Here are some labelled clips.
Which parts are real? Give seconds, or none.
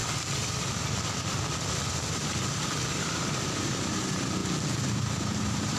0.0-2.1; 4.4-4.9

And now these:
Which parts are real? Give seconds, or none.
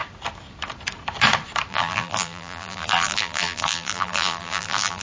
0.0-1.7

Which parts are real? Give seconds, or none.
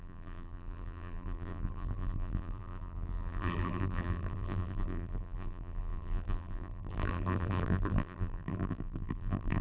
none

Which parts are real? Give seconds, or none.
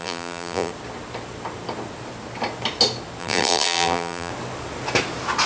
0.7-3.2; 4.3-5.5